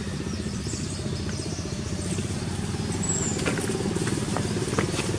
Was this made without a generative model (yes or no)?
yes